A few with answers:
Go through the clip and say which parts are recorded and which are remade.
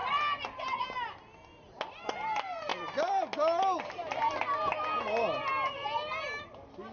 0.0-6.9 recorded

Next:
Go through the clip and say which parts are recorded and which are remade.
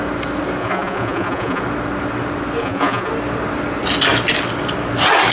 0.0-0.6 recorded; 0.6-1.6 remade; 1.6-2.6 recorded; 2.6-3.1 remade; 3.1-5.3 recorded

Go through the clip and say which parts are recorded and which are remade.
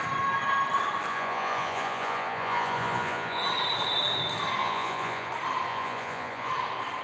0.0-1.1 recorded; 1.1-3.4 remade; 3.4-4.6 recorded; 4.6-5.3 remade; 5.3-5.7 recorded; 5.7-6.5 remade; 6.5-7.0 recorded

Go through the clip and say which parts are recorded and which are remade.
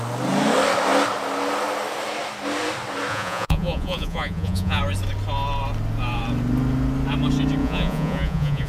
0.0-3.1 recorded; 3.1-4.8 remade; 4.8-7.6 recorded; 7.6-8.7 remade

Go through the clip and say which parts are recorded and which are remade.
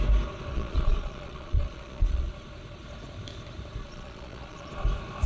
0.0-0.5 recorded; 0.5-2.3 remade; 2.3-3.8 recorded; 3.8-4.7 remade; 4.7-5.3 recorded